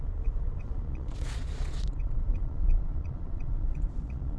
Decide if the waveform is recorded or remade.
remade